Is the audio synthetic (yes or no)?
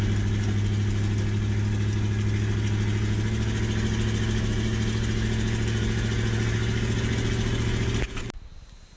no